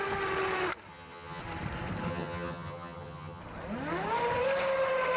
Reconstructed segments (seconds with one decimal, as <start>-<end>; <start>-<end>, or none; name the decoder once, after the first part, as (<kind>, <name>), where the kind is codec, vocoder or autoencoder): 0.9-1.4 (vocoder, HiFi-GAN); 2.1-3.4